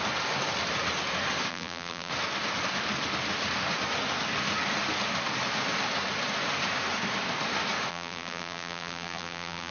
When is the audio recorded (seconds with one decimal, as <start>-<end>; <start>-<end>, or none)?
0.0-1.5; 2.1-7.9